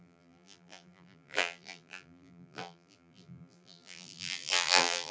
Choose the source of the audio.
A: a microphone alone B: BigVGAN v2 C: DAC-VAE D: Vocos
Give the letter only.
B